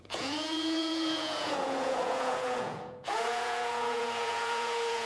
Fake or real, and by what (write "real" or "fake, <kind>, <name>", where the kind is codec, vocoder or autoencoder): fake, vocoder, Vocos